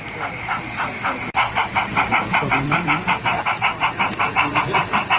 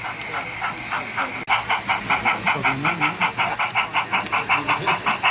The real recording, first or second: second